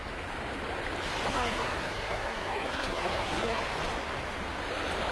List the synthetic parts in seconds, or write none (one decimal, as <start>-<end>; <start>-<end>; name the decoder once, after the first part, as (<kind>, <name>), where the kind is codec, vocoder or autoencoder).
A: 1.3-3.6 (codec, SNAC)